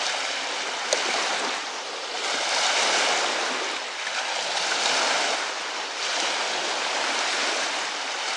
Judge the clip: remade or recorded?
recorded